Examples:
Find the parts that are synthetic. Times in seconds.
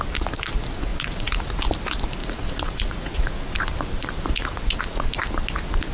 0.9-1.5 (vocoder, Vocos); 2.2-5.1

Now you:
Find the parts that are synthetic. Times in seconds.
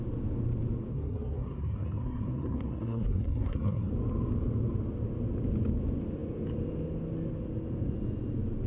0.9-3.9 (codec, SNAC)